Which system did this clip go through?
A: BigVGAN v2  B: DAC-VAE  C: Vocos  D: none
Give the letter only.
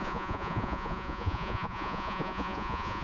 C